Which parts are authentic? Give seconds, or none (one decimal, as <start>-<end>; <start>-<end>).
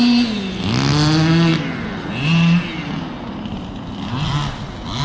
0.0-5.0